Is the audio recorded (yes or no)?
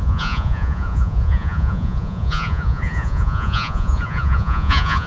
no